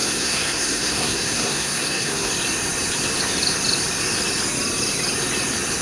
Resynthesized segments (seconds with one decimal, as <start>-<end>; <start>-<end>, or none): 0.0-2.3